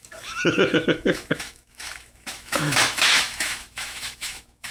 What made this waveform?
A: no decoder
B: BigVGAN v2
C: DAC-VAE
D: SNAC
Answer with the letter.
C